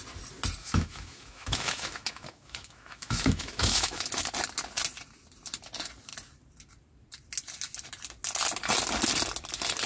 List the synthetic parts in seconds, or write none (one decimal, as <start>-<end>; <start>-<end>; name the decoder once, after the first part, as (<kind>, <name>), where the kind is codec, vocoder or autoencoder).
0.6-4.0 (autoencoder, DAC-VAE)